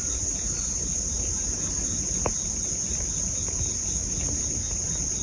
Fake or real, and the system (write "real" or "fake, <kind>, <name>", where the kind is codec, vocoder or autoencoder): real